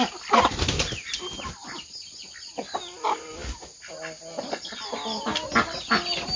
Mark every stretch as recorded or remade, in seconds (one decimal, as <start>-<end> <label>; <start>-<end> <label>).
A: 0.0-6.4 recorded